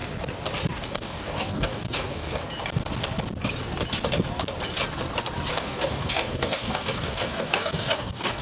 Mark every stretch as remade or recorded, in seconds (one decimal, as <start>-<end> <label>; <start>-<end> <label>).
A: 0.0-0.9 recorded; 0.9-2.4 remade; 2.4-5.5 recorded; 5.5-8.4 remade